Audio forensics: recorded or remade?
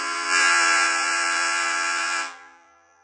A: remade